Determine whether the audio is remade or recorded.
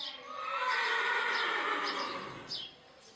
recorded